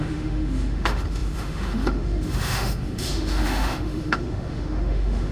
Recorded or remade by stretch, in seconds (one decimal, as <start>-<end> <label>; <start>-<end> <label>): 0.0-5.3 remade